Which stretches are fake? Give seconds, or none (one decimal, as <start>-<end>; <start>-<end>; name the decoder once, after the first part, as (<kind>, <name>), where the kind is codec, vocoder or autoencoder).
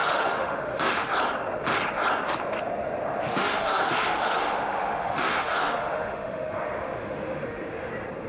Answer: 0.0-1.1 (autoencoder, DAC-VAE); 3.3-7.9